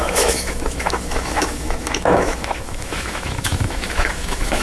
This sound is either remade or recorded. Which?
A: remade